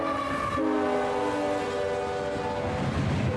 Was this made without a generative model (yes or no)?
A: yes